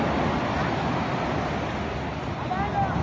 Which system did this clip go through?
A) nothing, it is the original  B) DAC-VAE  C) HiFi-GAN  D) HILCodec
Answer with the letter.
A